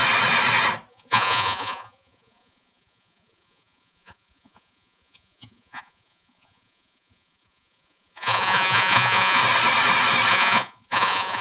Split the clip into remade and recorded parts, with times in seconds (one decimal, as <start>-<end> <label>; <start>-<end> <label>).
0.0-0.9 recorded; 0.9-9.4 remade; 9.4-10.3 recorded; 10.3-11.4 remade